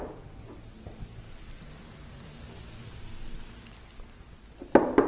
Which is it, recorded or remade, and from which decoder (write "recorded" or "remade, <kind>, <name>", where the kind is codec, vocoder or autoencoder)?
recorded